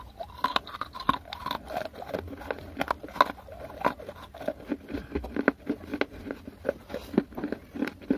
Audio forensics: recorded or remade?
recorded